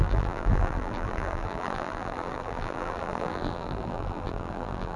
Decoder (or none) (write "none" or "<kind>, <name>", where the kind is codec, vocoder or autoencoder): vocoder, BigVGAN v2